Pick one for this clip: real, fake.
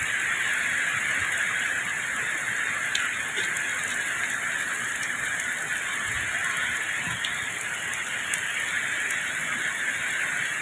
real